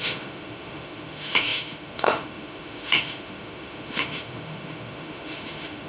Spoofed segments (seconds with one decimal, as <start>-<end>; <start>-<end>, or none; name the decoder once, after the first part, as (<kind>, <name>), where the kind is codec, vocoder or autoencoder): 0.0-5.9 (autoencoder, DAC-VAE)